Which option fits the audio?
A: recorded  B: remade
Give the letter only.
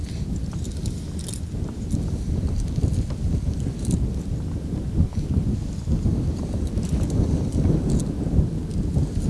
A